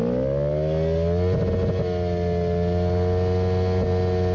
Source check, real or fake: real